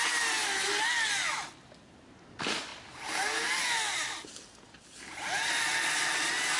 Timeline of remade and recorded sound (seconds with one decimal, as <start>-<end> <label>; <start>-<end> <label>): 0.0-6.6 recorded